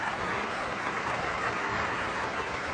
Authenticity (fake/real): fake